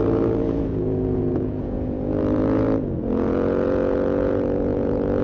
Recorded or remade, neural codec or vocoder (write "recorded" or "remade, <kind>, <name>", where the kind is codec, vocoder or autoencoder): remade, vocoder, Vocos